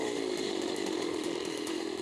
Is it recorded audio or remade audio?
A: remade